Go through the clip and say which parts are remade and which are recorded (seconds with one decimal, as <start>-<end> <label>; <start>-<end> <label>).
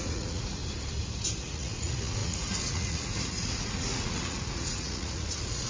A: 0.0-0.6 remade; 0.6-1.4 recorded; 1.4-5.7 remade